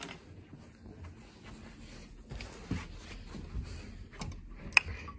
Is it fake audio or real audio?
real